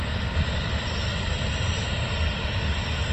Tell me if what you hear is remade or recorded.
recorded